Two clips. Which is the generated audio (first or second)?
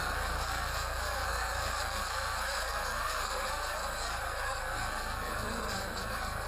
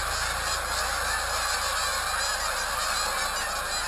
first